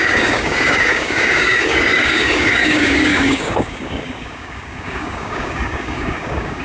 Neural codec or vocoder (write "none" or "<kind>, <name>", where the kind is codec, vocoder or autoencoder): codec, DAC